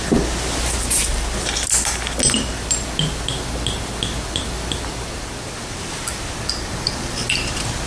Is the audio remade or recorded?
recorded